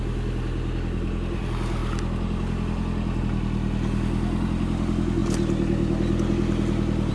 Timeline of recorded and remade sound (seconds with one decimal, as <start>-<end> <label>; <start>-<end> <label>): 0.0-7.1 recorded